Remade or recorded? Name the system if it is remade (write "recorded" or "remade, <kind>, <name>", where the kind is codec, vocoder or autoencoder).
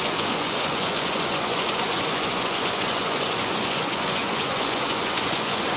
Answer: remade, vocoder, Vocos